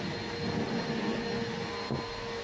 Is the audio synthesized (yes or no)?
no